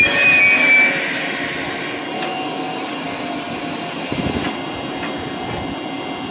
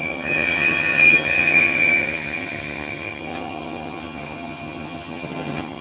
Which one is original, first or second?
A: first